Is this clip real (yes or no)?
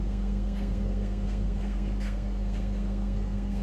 no